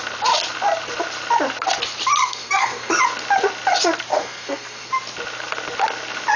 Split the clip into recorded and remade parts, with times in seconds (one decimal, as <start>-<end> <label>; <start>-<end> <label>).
0.0-2.2 recorded; 2.2-3.0 remade; 3.0-4.1 recorded; 4.1-4.9 remade; 4.9-6.4 recorded